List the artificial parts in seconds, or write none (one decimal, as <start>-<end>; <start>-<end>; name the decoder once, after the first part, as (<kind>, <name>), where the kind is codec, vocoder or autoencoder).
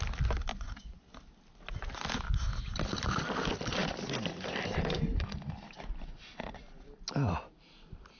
0.5-1.0 (vocoder, Vocos)